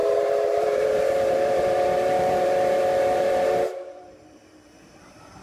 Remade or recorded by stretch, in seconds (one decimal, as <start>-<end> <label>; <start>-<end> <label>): 0.0-5.4 remade